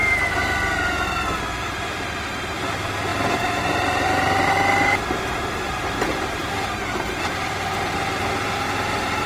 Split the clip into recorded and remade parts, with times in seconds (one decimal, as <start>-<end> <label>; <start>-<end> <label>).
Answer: 0.0-3.1 recorded; 3.1-3.6 remade; 3.6-9.3 recorded